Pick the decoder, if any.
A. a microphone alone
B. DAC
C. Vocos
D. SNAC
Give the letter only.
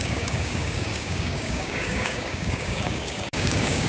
B